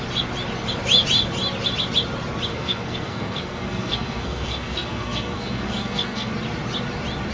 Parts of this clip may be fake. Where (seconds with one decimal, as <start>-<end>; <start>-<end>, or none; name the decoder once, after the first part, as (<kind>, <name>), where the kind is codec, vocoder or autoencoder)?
2.5-6.3 (codec, SNAC)